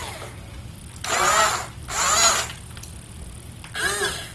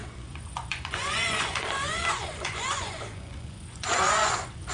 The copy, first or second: second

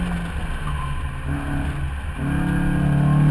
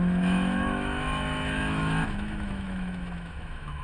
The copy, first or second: second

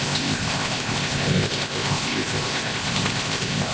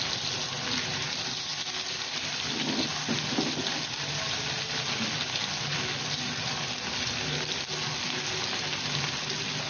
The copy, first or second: first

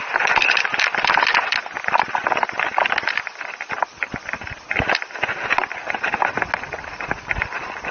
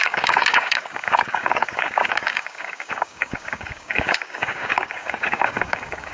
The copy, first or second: second